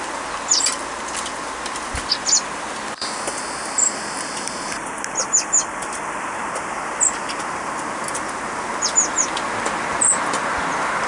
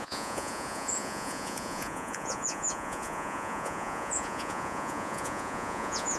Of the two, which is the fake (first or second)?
second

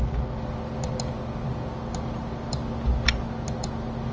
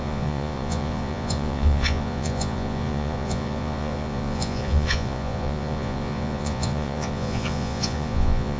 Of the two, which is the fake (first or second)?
second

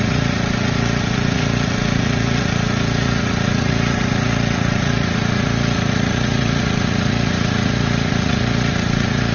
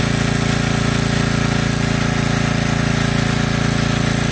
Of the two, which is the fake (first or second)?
first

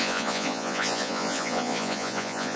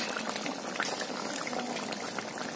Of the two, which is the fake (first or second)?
first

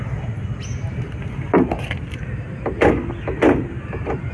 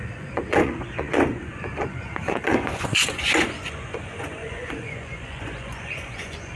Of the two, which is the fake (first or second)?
second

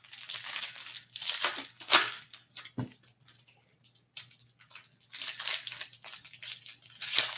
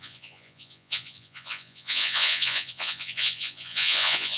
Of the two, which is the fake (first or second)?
second